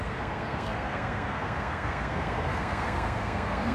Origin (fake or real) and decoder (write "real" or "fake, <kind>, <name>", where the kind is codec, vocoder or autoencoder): fake, codec, SNAC